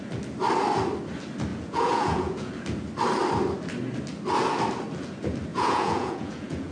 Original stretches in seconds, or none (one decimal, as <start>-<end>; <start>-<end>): 0.0-1.5; 2.5-5.5